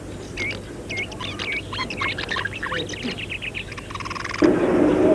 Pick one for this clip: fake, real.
real